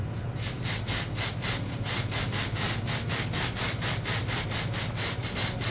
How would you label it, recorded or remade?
recorded